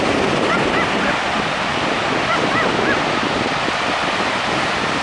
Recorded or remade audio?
recorded